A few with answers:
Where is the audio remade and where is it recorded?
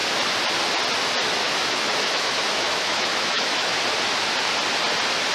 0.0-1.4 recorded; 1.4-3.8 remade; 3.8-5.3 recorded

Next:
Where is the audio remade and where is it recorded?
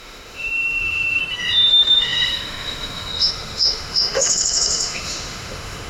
0.0-1.2 remade; 1.2-1.7 recorded; 1.7-5.9 remade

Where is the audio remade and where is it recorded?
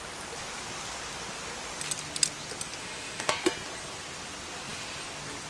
0.0-2.8 recorded; 2.8-3.3 remade; 3.3-5.5 recorded